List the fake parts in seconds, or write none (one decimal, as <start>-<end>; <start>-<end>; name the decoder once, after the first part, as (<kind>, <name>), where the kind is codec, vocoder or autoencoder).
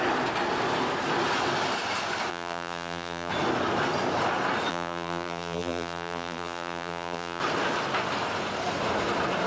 2.3-3.3 (vocoder, BigVGAN v2); 4.7-7.4